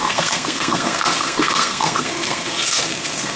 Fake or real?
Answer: fake